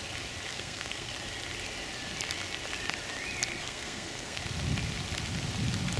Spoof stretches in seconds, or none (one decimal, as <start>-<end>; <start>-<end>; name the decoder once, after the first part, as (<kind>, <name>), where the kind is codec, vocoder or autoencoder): 0.5-1.1 (codec, SNAC); 3.5-4.4

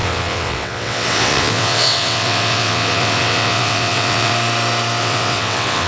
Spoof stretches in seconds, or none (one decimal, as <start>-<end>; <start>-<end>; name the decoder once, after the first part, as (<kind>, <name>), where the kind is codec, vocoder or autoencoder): 0.0-4.3 (vocoder, WaveNeXt); 5.0-5.9